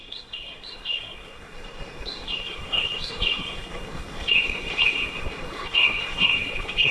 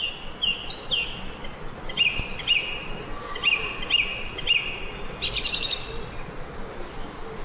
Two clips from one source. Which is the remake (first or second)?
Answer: first